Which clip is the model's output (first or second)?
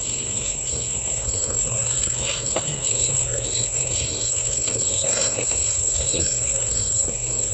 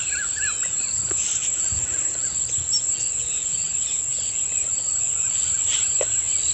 first